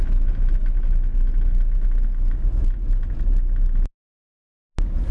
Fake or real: real